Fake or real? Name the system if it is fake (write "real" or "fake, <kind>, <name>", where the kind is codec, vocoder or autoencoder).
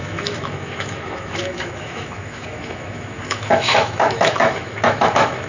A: fake, autoencoder, DAC-VAE